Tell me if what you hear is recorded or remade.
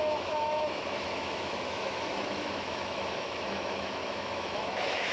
remade